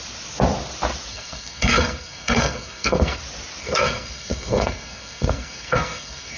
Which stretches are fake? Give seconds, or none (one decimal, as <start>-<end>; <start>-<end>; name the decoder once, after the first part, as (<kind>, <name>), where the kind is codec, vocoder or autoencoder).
1.1-3.2 (codec, SNAC); 3.6-6.4